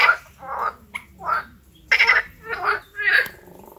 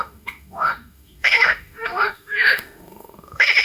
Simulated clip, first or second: second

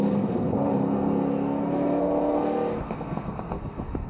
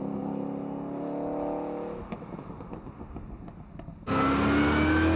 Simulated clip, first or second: first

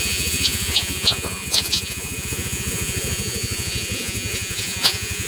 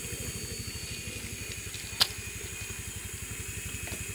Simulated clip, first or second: first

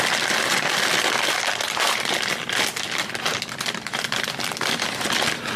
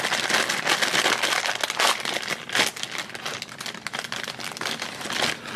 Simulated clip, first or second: first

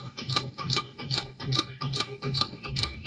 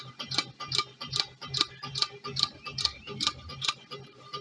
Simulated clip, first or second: first